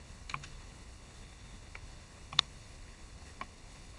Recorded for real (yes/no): no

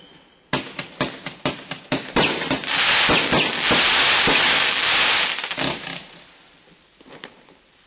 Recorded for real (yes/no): yes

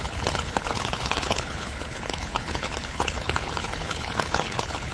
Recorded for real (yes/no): no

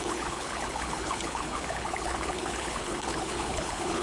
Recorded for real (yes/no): no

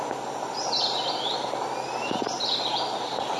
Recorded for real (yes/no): yes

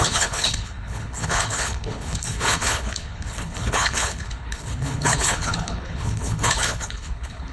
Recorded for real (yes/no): no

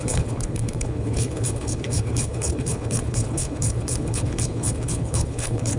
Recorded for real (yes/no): no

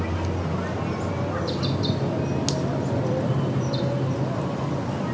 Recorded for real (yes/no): yes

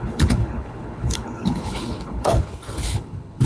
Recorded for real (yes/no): no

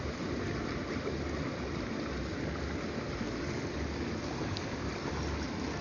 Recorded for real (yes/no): yes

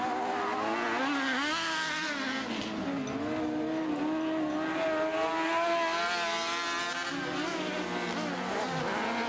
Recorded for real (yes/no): yes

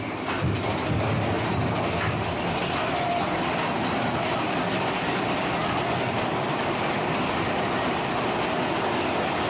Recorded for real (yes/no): yes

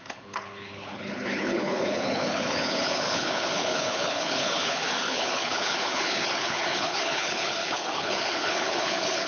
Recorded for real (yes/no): no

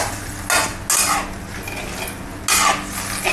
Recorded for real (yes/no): yes